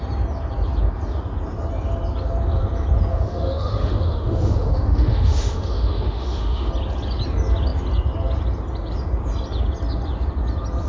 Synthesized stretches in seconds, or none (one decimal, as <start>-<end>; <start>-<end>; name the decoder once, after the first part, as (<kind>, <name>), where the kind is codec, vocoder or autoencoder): 3.1-6.7 (autoencoder, DAC-VAE)